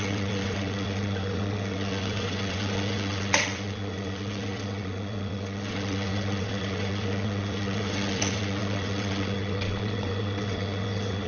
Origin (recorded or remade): remade